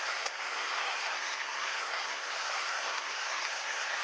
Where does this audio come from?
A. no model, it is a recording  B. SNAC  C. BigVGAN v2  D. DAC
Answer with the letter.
B